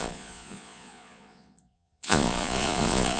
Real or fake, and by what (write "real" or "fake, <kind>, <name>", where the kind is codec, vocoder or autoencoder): fake, vocoder, Vocos